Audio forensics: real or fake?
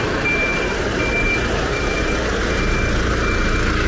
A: real